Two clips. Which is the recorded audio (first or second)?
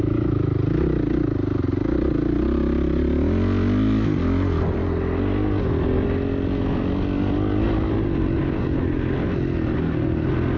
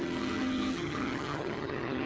first